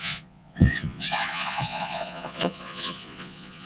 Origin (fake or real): fake